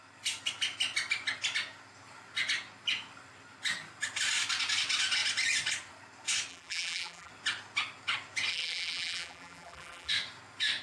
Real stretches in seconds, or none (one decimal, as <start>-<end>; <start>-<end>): 0.0-6.5; 7.3-8.5; 10.1-10.8